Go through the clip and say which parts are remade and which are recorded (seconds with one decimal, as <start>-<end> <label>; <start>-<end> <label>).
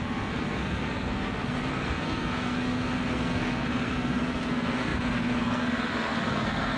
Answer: 0.0-6.8 remade